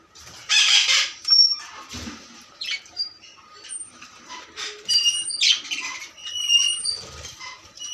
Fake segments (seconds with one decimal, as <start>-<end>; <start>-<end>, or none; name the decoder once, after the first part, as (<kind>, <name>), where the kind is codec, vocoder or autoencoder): 0.0-6.2 (vocoder, BigVGAN v2); 7.3-7.9